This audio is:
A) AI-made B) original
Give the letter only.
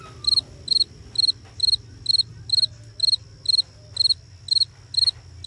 B